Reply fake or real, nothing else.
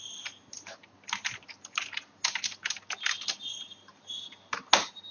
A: real